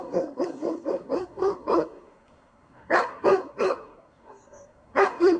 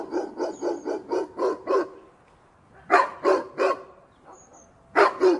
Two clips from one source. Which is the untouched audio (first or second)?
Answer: second